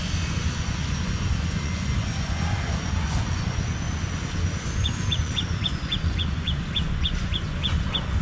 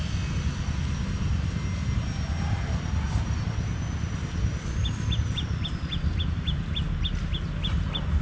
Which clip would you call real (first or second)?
second